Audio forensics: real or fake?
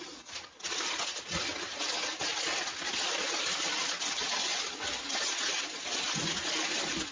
real